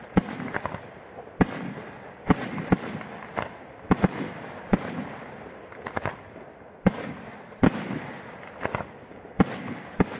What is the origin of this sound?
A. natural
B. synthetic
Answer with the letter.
A